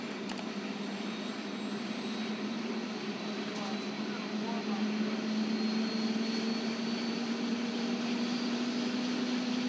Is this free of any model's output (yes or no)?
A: yes